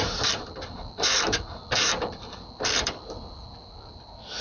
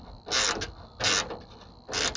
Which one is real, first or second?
second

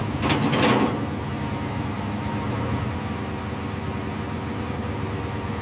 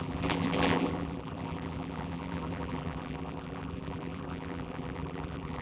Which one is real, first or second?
first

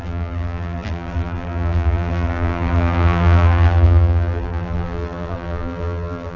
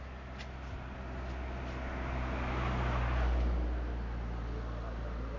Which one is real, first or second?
second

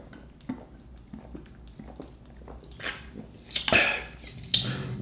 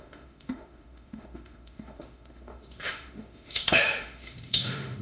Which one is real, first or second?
first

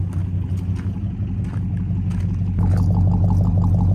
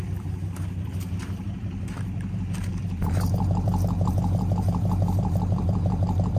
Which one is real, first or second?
first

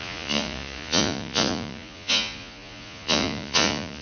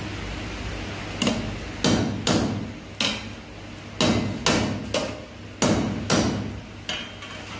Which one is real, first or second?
second